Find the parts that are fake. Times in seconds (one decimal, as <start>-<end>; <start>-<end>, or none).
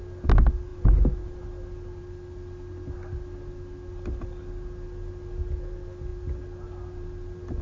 none